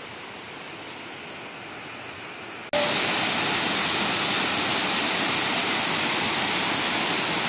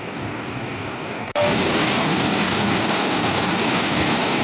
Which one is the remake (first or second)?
second